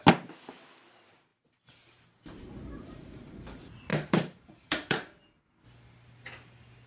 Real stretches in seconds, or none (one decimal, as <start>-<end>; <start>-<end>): 0.0-1.3; 3.1-3.9; 5.4-6.9